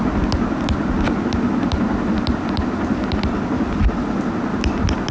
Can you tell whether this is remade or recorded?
recorded